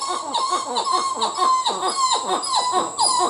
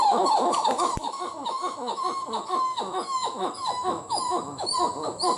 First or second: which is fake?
second